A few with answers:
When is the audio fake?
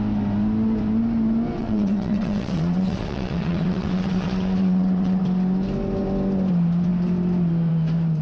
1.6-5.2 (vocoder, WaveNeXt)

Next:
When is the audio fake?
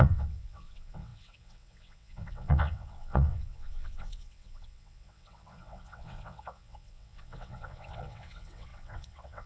0.0-9.5 (vocoder, WaveNeXt)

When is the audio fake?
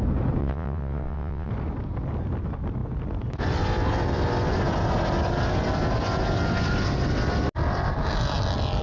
0.4-1.5 (vocoder, WaveNeXt)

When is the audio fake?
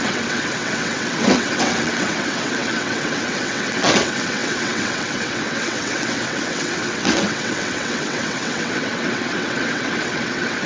0.0-10.7 (vocoder, WaveNeXt)